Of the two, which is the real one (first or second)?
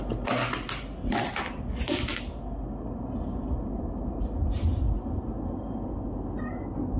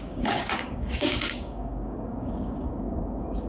first